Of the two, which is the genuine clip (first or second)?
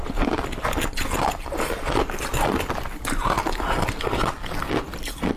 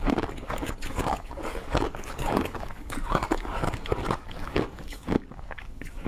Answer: first